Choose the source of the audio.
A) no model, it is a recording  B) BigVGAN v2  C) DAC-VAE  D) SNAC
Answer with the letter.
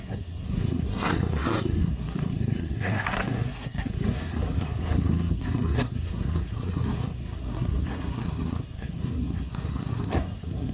D